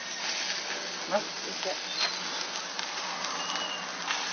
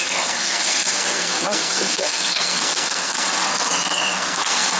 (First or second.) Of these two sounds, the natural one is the first